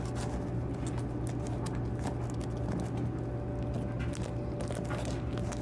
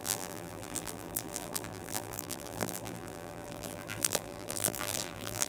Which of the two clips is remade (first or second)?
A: second